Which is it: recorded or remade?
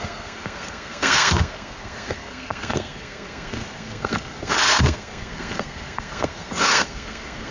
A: remade